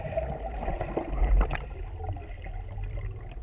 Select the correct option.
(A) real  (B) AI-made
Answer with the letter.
A